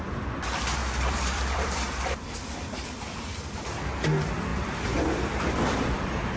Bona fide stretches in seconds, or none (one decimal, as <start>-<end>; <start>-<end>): 0.0-0.8; 3.6-4.5